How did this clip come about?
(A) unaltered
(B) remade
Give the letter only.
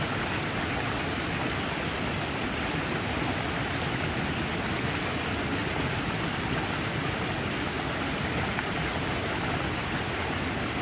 A